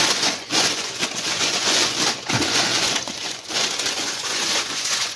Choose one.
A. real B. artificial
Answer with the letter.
B